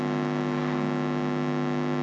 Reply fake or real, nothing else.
real